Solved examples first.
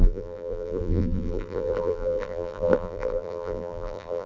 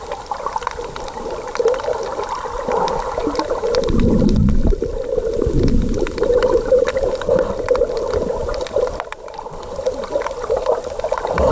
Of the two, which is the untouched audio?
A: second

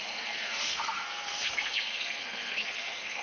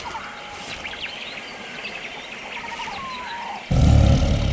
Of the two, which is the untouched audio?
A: second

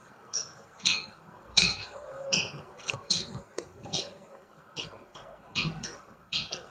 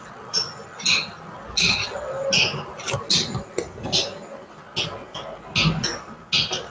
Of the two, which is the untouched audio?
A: second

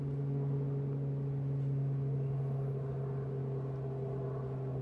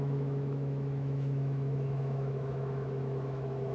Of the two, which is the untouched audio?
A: first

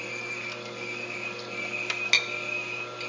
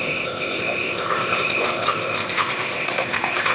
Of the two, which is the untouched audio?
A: first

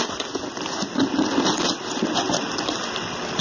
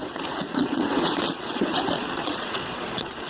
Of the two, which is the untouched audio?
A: first